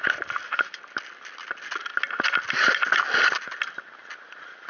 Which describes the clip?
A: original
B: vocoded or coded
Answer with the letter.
A